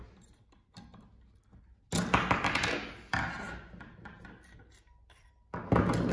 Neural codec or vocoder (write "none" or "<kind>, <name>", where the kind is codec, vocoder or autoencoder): none